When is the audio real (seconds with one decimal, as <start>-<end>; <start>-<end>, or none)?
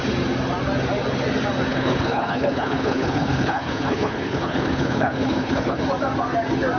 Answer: 0.0-1.7; 5.8-6.8